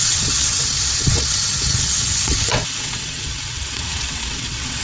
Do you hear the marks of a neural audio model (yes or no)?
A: yes